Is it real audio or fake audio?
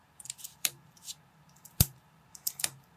fake